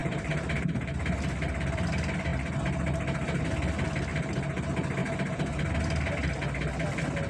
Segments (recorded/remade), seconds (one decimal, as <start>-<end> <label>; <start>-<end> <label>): 0.0-1.9 remade; 1.9-2.3 recorded; 2.3-3.4 remade; 3.4-4.1 recorded; 4.1-4.6 remade; 4.6-5.0 recorded; 5.0-5.7 remade; 5.7-7.3 recorded